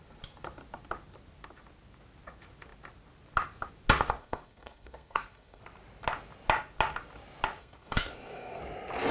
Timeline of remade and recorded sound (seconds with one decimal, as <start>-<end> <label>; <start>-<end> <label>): 0.0-4.2 recorded; 4.2-5.6 remade; 5.6-7.6 recorded; 7.6-8.6 remade; 8.6-9.1 recorded